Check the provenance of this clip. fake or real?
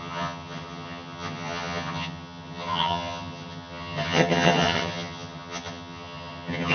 fake